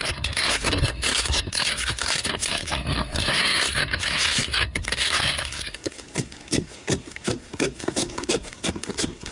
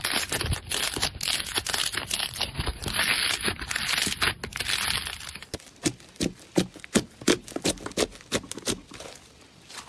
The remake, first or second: first